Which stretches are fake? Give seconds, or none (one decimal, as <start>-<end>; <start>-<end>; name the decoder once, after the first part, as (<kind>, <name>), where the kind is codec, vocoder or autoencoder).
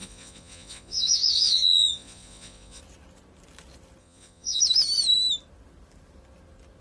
0.0-2.8 (vocoder, Vocos); 4.0-4.6